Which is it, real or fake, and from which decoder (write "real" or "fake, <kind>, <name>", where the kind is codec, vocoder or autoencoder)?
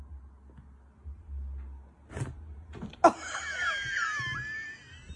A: real